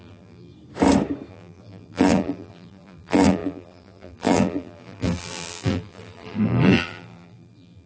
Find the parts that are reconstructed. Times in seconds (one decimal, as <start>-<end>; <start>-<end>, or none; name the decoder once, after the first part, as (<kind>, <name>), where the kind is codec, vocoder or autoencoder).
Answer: 0.0-0.5 (vocoder, BigVGAN v2); 1.3-7.9